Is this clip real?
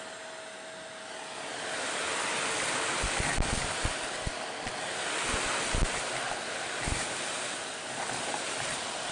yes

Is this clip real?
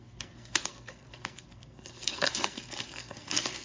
no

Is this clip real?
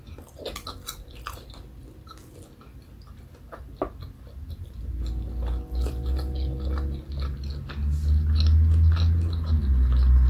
yes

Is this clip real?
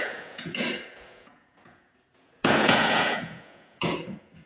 no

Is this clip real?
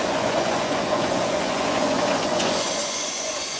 no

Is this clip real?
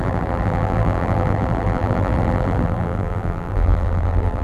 no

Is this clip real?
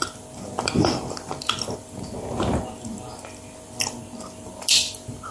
yes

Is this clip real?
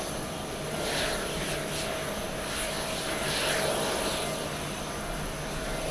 yes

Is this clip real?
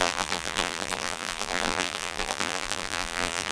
no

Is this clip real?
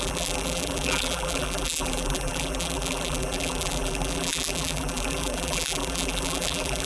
no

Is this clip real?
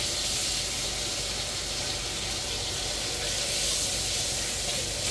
yes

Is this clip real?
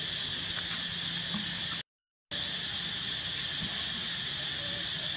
yes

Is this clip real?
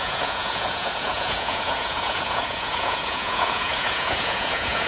no